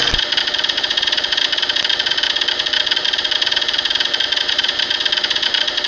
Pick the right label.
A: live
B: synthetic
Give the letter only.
B